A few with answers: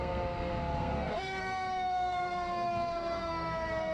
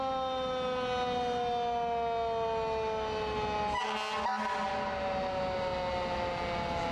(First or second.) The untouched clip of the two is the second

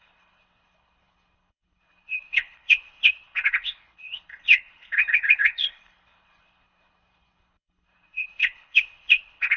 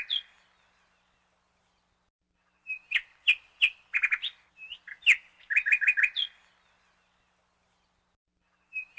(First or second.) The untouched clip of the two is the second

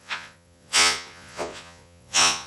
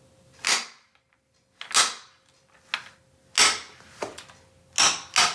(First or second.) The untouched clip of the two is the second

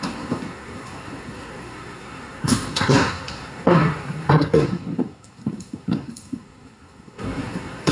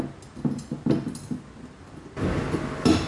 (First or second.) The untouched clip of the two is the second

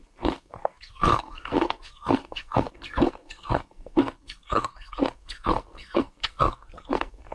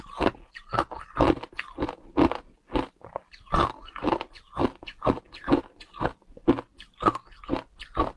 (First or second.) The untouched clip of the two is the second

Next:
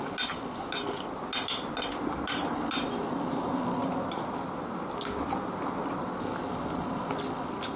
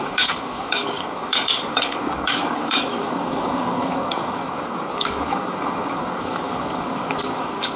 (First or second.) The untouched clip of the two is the first